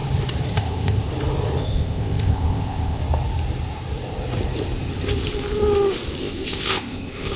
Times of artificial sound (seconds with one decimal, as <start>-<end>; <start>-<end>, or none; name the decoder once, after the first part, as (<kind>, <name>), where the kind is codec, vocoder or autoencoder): 0.5-1.1 (codec, ZipCodec); 1.6-3.0; 6.2-7.4